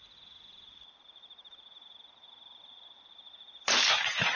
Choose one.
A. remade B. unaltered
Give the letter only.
A